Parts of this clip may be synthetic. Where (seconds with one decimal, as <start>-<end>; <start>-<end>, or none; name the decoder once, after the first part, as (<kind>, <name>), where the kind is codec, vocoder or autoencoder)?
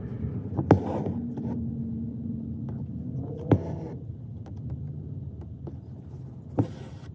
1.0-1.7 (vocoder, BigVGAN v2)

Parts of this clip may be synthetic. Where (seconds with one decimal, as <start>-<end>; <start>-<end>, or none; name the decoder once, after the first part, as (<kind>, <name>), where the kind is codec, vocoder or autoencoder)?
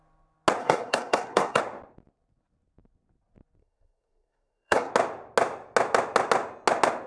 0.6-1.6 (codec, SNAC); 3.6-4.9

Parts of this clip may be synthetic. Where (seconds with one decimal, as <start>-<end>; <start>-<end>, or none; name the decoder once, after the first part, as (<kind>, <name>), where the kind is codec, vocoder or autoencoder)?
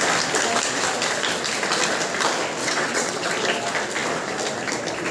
2.6-3.3 (vocoder, WaveNeXt)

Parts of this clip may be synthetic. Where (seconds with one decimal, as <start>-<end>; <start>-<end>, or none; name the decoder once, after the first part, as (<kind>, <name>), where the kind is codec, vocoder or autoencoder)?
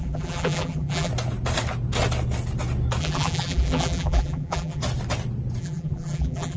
0.0-1.1 (vocoder, BigVGAN v2); 3.0-4.8; 5.6-6.6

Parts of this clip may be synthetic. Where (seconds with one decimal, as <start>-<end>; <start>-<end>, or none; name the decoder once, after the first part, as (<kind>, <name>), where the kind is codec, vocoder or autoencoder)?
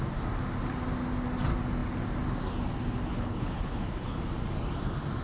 3.1-4.2 (codec, HILCodec)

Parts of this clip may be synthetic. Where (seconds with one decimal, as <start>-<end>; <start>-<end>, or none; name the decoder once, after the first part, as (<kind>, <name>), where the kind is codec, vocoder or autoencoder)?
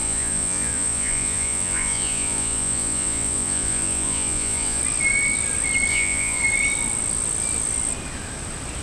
0.0-4.8 (vocoder, Vocos); 5.9-6.4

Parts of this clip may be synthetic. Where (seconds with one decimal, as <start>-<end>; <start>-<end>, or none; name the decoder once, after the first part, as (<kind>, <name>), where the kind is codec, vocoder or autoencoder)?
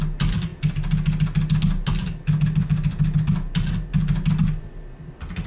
none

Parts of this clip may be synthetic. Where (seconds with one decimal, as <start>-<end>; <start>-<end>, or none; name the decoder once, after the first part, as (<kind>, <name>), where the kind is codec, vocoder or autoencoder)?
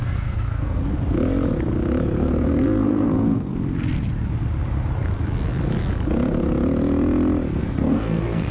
0.0-0.8 (codec, SNAC); 2.2-3.5; 7.6-8.5